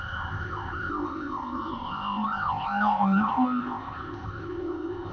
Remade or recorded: remade